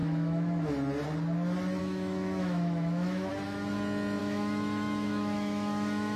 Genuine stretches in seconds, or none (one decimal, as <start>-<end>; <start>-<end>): 0.7-1.8; 3.3-4.2